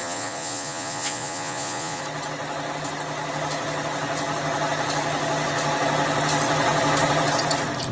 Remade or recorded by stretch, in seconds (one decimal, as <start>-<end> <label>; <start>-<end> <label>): 0.0-2.0 remade; 2.0-7.9 recorded